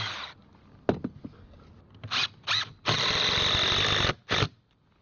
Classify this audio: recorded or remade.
recorded